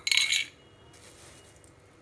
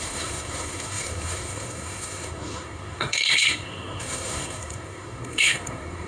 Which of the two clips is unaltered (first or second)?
first